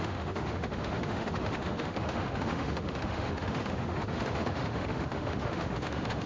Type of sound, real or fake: fake